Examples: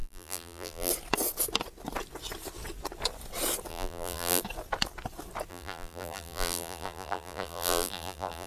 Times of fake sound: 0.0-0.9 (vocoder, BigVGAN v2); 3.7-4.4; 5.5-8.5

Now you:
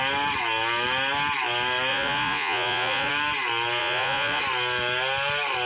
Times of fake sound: 1.9-3.1 (vocoder, Vocos); 3.8-4.4